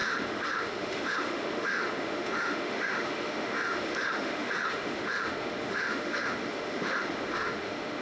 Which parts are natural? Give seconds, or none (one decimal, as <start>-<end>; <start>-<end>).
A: none